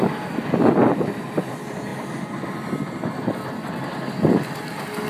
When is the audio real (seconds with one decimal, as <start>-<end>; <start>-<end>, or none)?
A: 0.0-5.1